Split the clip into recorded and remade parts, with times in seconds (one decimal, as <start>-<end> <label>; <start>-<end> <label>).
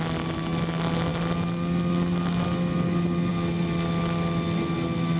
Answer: 0.0-5.2 recorded